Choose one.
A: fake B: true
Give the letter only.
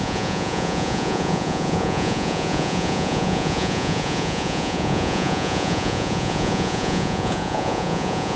A